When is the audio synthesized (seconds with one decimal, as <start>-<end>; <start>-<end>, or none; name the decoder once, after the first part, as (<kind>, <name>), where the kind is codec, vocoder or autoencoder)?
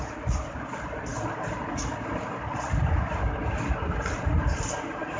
none